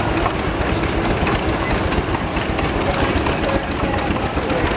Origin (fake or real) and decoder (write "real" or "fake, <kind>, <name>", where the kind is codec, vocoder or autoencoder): real